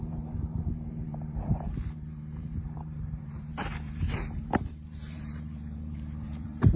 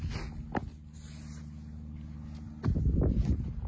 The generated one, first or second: first